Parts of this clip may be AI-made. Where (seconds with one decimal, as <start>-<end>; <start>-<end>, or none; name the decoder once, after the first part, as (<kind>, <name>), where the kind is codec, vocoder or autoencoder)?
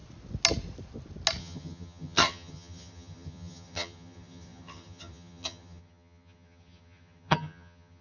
1.4-8.0 (vocoder, HiFi-GAN)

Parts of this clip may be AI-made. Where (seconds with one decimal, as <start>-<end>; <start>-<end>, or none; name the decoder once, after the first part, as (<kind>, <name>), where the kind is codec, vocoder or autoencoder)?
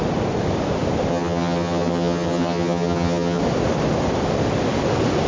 1.1-3.4 (vocoder, HiFi-GAN)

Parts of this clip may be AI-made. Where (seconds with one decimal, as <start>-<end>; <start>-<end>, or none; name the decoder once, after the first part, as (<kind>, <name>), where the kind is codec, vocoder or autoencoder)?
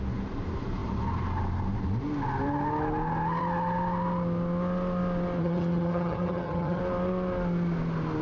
5.4-6.8 (vocoder, HiFi-GAN)